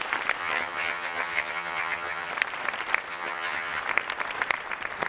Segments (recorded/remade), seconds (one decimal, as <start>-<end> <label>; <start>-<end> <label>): 0.0-0.4 recorded; 0.4-2.3 remade; 2.3-3.1 recorded; 3.1-3.8 remade; 3.8-5.1 recorded